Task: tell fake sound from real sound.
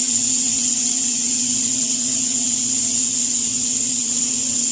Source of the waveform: fake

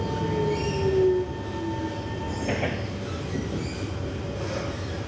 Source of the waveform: real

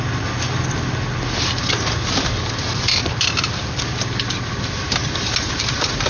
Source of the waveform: real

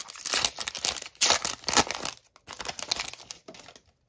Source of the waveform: real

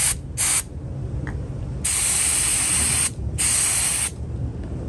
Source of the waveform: real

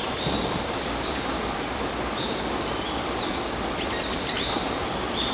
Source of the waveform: real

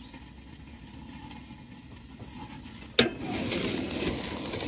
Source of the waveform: real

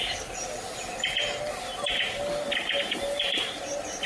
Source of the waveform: real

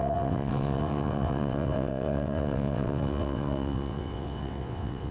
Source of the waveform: fake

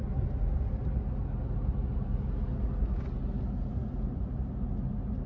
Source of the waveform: real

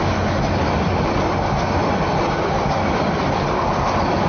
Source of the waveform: real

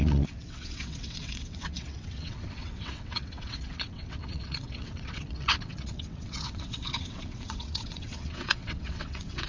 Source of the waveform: fake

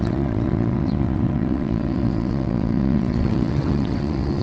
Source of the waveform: fake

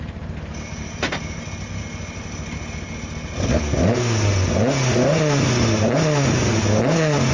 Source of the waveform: real